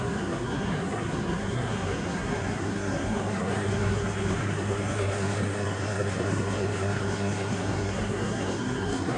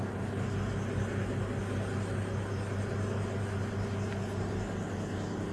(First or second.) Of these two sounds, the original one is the second